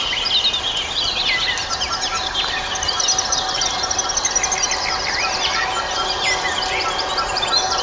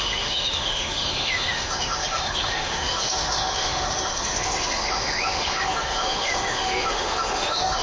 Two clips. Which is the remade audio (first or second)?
second